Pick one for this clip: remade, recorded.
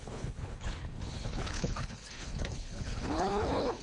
remade